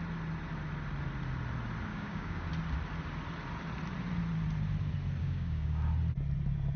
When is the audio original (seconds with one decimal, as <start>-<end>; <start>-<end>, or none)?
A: 0.0-1.9; 2.5-5.2; 5.9-6.8